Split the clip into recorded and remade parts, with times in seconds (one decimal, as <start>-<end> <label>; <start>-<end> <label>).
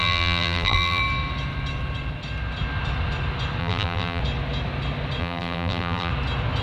0.0-1.0 remade; 1.0-3.6 recorded; 3.6-4.2 remade; 4.2-5.2 recorded; 5.2-6.1 remade; 6.1-6.6 recorded